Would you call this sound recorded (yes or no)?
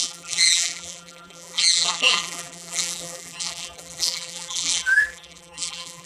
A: no